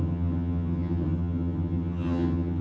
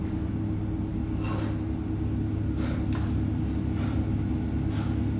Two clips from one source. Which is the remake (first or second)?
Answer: first